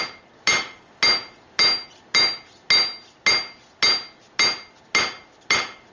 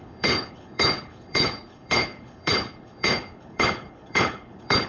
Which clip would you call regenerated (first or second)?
second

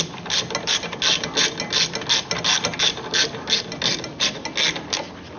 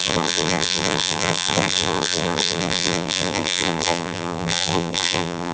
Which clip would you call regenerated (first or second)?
second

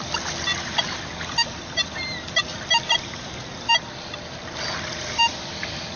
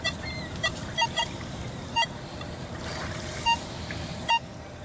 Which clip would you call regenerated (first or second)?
second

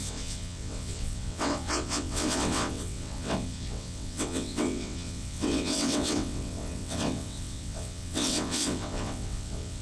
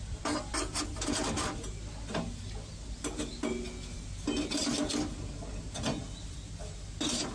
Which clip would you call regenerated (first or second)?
first